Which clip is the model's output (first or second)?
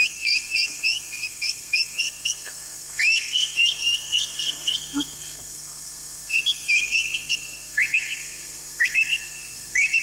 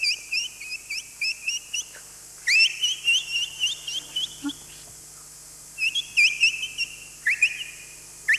first